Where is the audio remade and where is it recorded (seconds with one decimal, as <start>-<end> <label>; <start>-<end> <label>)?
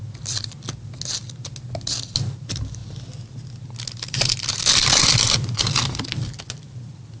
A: 0.0-7.2 recorded